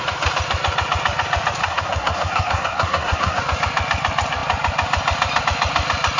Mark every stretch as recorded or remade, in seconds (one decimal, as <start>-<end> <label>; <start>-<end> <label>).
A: 0.0-1.6 recorded; 1.6-3.4 remade; 3.4-6.2 recorded